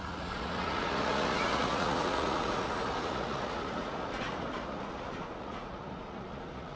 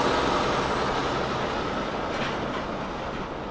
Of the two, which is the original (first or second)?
second